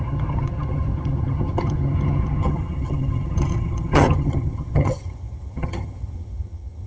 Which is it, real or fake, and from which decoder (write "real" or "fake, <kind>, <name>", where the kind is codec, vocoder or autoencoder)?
fake, vocoder, HiFi-GAN